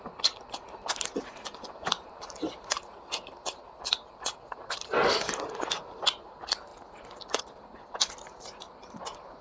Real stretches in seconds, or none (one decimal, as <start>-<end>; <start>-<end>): 0.0-9.4